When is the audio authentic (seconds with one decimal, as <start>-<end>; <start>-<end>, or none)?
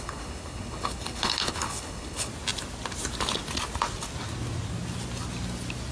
2.3-5.9